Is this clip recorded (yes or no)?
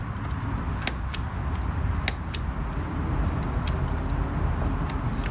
yes